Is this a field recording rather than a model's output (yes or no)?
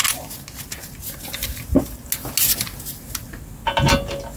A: yes